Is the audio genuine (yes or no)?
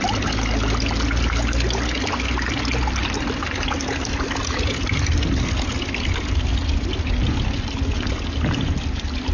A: yes